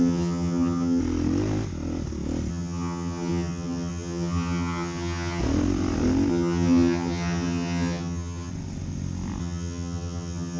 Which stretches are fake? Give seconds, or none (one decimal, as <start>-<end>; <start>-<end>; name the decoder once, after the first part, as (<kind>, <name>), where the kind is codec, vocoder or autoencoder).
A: 0.0-1.0 (vocoder, HiFi-GAN); 2.5-5.4; 6.3-8.5; 9.4-10.6